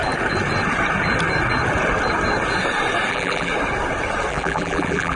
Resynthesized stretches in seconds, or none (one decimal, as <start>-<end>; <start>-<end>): 3.1-3.5; 4.3-5.2